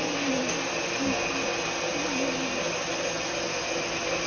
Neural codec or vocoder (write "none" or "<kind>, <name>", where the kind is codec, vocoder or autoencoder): none